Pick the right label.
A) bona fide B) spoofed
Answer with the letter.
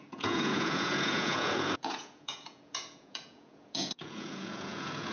B